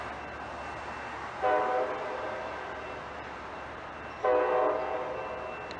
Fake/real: real